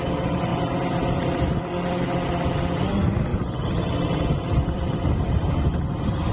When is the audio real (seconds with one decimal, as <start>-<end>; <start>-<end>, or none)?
0.0-0.5; 1.7-3.3; 5.6-6.3